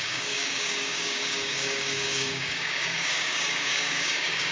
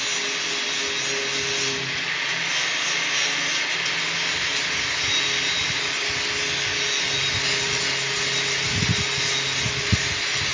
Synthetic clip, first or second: first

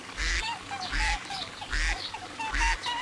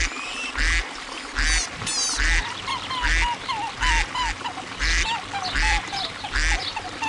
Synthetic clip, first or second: first